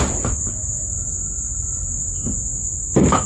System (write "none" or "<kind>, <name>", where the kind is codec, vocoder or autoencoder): none